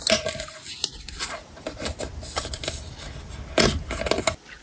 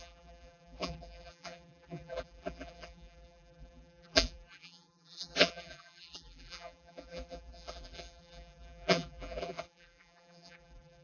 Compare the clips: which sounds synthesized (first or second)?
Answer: second